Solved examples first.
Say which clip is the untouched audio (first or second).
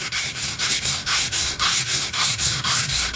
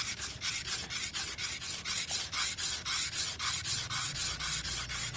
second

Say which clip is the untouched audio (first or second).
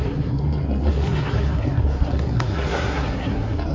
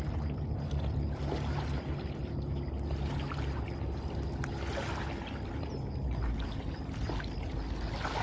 second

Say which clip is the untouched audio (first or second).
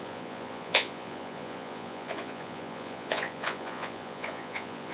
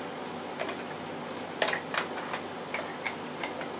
second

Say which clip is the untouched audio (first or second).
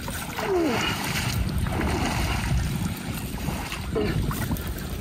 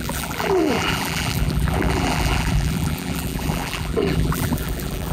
first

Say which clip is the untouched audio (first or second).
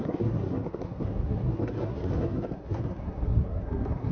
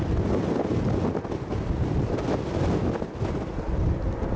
second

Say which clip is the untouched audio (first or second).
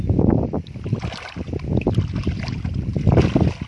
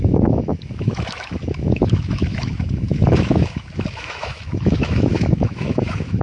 first